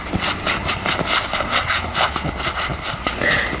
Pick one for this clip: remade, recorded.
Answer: recorded